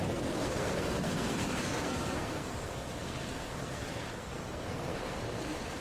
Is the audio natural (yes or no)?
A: no